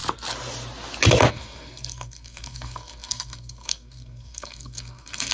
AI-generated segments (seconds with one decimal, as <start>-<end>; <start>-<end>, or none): 1.3-5.3